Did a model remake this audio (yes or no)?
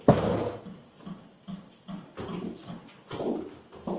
no